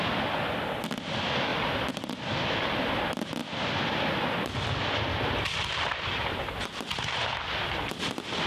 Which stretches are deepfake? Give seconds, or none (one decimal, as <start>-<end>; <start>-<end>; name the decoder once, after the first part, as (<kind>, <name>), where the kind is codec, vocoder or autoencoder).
none